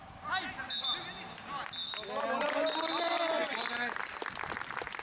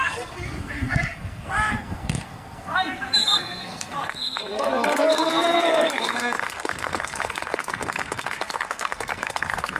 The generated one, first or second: second